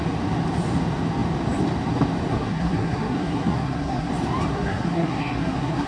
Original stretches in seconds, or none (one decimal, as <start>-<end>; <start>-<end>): 0.0-2.3; 4.1-4.5